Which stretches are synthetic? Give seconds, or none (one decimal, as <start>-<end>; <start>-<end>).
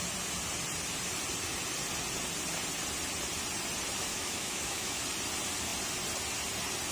4.1-5.0